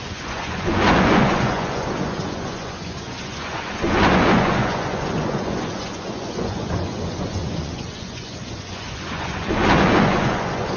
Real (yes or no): no